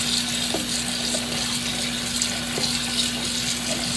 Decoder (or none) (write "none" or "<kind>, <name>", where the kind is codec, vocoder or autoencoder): none